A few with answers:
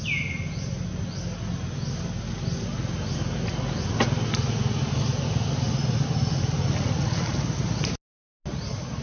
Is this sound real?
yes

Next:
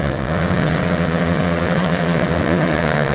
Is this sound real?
no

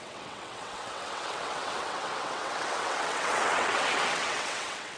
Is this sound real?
no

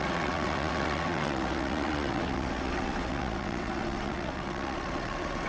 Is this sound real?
no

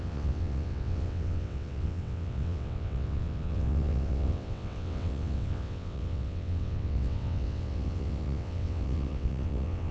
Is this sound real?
no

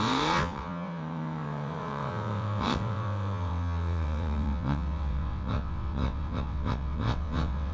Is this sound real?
no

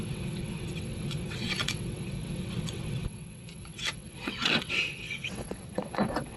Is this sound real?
no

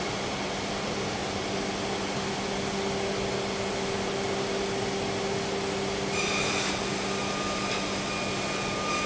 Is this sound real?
yes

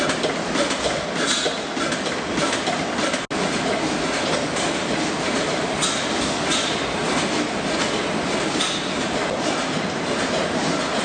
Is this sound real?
yes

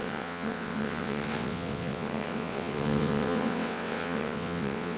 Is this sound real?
no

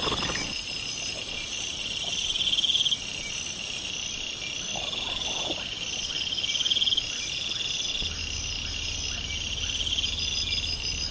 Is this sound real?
yes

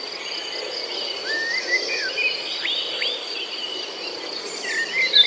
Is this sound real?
yes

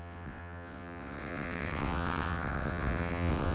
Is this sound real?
no